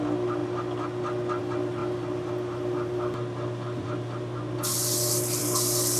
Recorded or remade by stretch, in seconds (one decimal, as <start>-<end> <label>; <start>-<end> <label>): 0.0-6.0 recorded

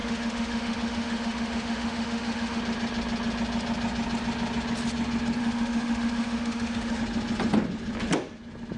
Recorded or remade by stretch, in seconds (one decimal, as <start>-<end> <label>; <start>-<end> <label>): 0.0-2.6 remade; 2.6-5.4 recorded; 5.4-7.0 remade; 7.0-8.8 recorded

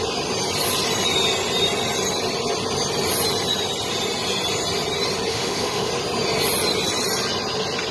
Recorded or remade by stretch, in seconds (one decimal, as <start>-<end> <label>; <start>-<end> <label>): 0.0-5.3 recorded; 5.3-5.9 remade; 5.9-7.9 recorded

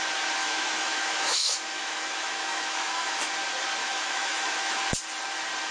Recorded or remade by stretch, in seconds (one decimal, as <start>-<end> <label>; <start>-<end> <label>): 0.0-0.4 recorded; 0.4-3.3 remade; 3.3-3.8 recorded; 3.8-4.8 remade; 4.8-5.7 recorded